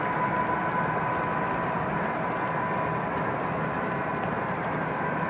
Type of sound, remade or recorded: recorded